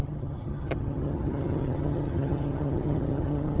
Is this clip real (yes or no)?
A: no